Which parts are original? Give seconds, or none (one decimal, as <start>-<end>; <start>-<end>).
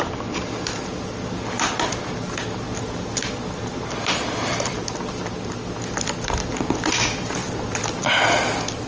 0.0-8.9